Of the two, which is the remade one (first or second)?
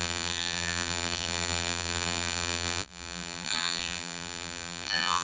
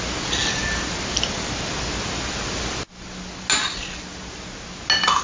first